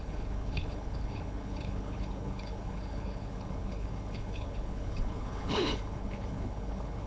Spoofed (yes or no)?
yes